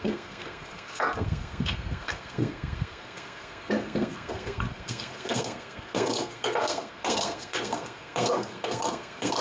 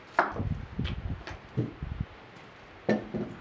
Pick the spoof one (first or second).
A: first